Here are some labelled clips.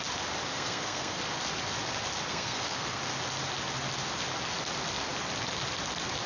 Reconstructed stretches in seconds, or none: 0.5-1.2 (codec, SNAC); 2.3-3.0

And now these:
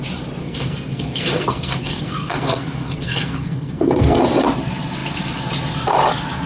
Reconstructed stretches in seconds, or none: 0.4-4.2 (codec, SNAC)

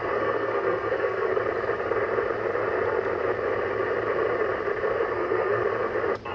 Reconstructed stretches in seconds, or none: 0.0-1.3 (codec, SNAC); 5.1-5.6

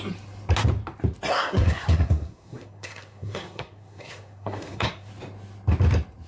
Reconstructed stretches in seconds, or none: 1.3-5.1 (codec, SNAC)

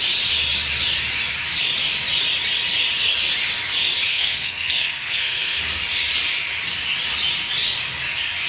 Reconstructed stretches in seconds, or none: 4.1-5.6 (codec, SNAC)

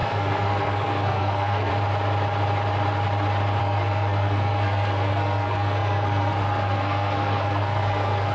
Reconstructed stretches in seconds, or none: 0.0-1.7 (codec, SNAC); 3.6-8.3

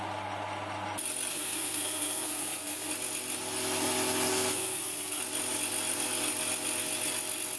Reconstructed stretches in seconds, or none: 1.3-2.9 (codec, SNAC); 4.3-5.2

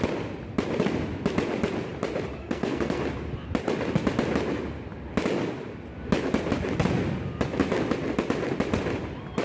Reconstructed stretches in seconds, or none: 2.4-3.0 (codec, SNAC)